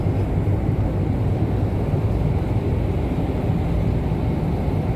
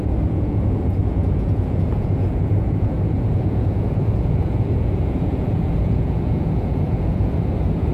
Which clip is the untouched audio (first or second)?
first